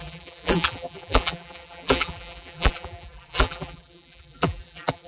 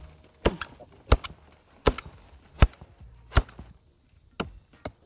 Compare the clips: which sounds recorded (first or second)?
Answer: second